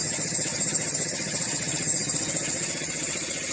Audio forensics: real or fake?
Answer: fake